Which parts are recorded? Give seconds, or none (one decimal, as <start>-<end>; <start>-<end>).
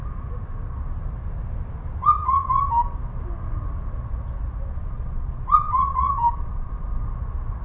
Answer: 0.0-2.0; 2.5-4.7; 7.0-7.6